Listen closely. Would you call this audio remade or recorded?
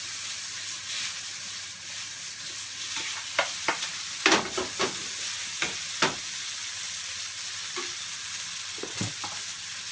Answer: recorded